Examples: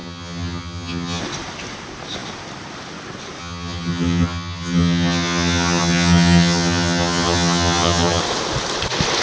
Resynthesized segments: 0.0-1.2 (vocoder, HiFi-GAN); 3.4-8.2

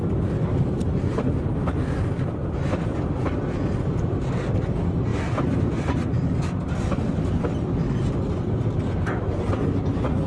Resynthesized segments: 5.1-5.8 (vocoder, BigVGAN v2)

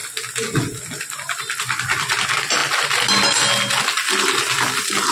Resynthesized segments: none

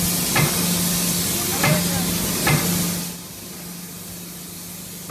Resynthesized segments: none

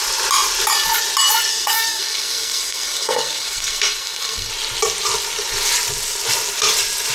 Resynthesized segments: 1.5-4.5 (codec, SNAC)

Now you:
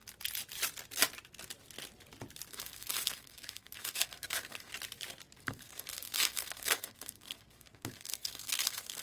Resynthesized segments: 2.5-4.7 (codec, SNAC); 5.4-9.0

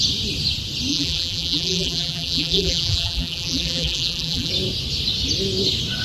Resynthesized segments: 0.9-4.5 (vocoder, BigVGAN v2)